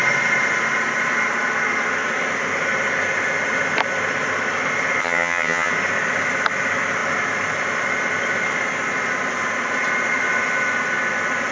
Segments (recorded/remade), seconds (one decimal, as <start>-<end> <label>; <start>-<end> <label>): 0.0-5.0 recorded; 5.0-5.7 remade; 5.7-11.5 recorded